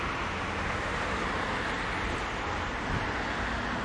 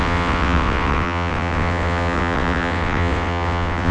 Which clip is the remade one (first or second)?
second